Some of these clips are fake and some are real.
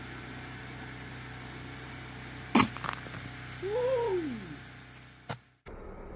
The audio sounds real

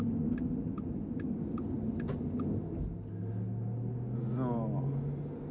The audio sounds real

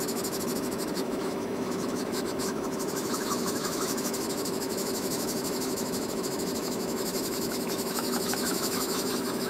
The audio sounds fake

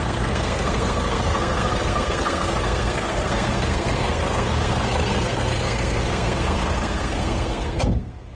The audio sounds fake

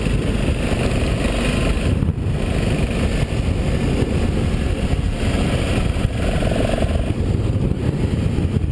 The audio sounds real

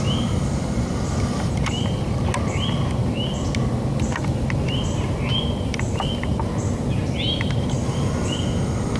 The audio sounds real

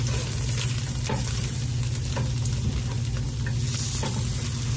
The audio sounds real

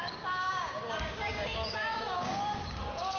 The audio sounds fake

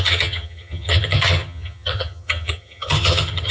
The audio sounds fake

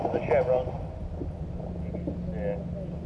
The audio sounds real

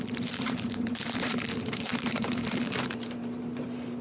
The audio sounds fake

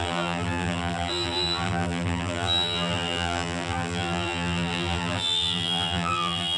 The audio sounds fake